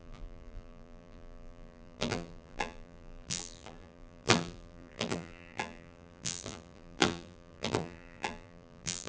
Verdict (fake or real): fake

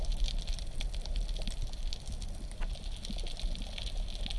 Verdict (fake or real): real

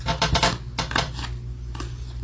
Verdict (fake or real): real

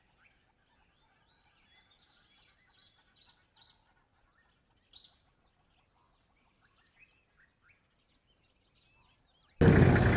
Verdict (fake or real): real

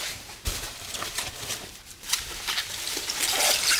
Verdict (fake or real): fake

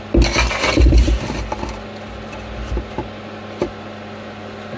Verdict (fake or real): real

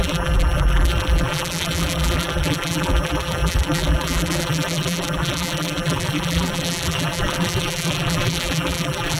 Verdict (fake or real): fake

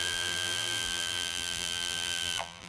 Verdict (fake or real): fake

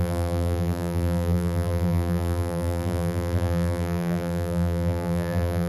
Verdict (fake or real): fake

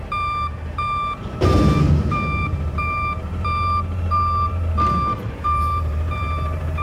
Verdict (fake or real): fake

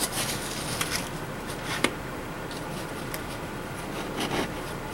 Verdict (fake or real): fake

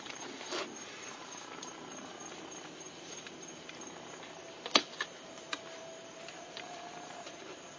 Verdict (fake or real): fake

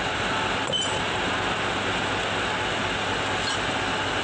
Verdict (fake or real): real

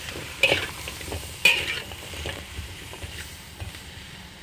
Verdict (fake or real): fake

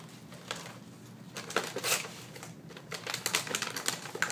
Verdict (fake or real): real